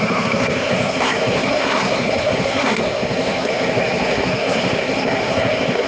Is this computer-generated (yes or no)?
yes